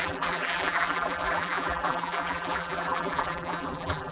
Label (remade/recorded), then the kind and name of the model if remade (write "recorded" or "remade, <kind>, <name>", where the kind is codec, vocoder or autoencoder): remade, vocoder, BigVGAN v2